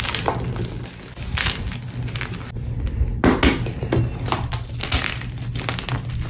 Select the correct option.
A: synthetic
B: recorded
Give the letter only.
B